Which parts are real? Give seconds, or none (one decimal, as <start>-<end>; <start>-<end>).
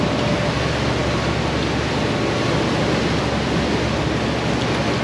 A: 0.0-5.0